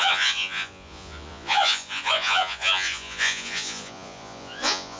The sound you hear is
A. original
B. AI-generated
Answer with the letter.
B